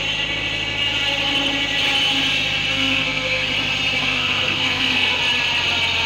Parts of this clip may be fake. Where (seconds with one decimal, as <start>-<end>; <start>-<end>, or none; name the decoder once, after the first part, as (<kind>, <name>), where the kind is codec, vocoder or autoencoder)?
2.7-3.5 (codec, SNAC); 4.0-5.2